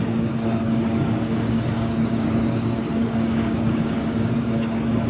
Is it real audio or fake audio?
fake